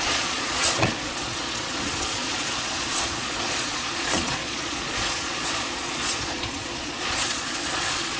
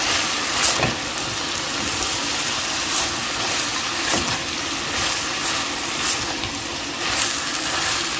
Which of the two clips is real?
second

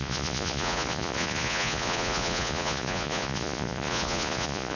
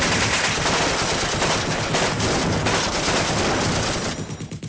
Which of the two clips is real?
second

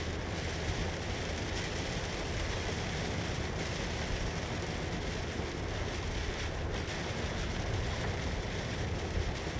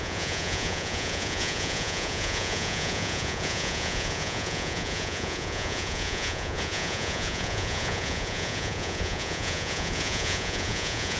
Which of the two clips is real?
first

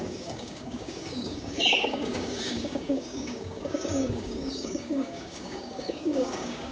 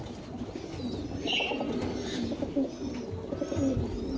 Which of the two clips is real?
second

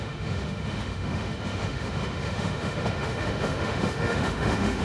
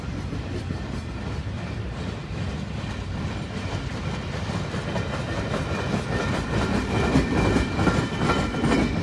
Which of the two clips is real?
second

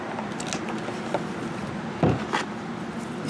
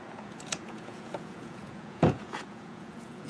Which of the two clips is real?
first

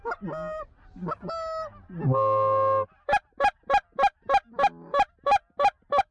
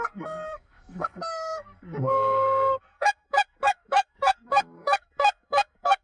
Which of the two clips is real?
first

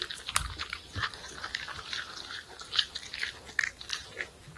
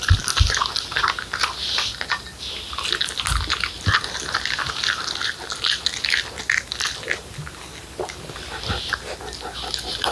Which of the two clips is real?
second